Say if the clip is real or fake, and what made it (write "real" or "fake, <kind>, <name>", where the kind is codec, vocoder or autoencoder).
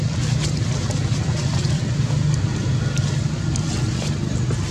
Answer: real